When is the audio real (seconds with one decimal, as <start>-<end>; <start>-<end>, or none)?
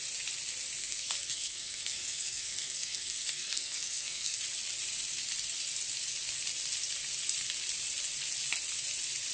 0.0-0.8; 4.4-9.3